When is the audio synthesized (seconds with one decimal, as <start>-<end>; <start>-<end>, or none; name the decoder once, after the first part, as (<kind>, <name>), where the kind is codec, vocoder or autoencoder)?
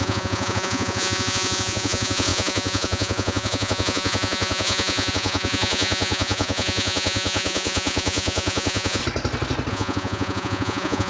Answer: 0.0-9.0 (vocoder, Vocos); 9.7-11.1